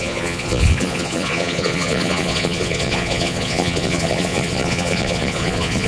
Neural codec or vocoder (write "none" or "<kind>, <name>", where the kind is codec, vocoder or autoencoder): vocoder, Vocos